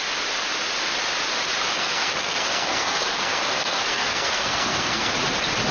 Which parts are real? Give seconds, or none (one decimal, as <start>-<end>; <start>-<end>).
0.0-1.7; 5.1-5.7